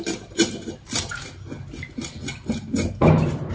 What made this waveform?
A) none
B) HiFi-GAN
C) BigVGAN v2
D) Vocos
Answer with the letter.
A